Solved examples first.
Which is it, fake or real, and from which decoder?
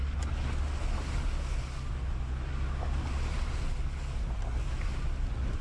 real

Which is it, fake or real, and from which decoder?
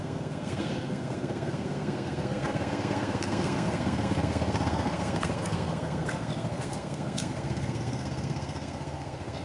fake, codec, SNAC